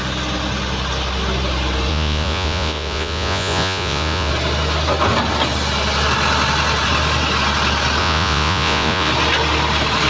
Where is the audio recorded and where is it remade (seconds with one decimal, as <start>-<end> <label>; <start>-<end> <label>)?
0.0-1.9 recorded; 1.9-4.3 remade; 4.3-8.0 recorded; 8.0-9.1 remade; 9.1-10.1 recorded